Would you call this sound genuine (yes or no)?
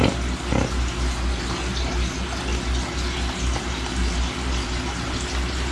yes